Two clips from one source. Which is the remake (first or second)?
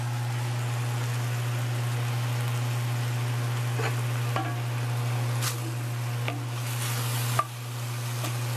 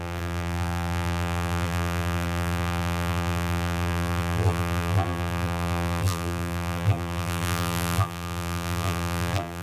second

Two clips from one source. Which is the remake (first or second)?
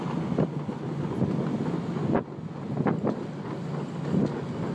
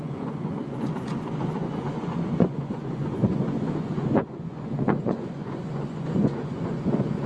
second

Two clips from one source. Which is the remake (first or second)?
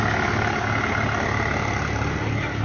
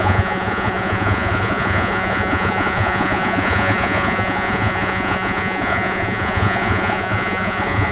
second